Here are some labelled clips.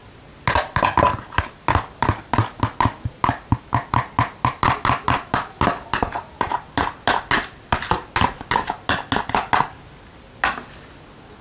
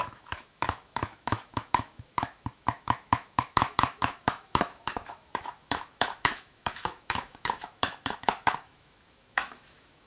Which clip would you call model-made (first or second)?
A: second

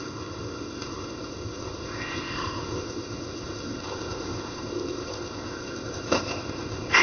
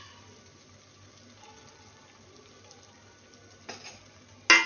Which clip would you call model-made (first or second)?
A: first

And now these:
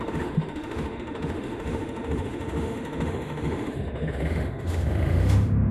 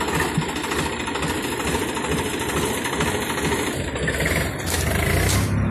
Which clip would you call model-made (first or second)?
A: first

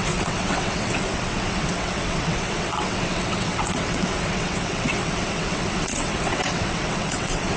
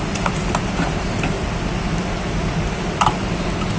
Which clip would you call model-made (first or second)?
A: first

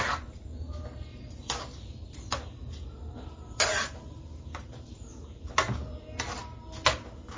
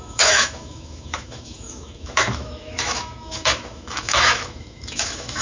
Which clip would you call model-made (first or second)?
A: second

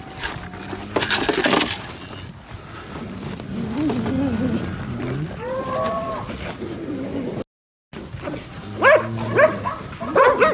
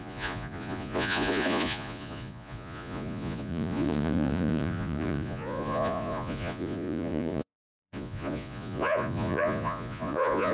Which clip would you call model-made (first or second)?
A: second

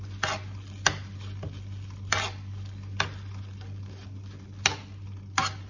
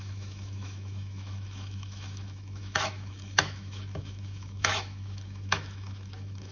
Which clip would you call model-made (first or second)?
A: second